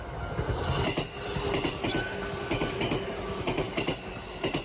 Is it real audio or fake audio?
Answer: real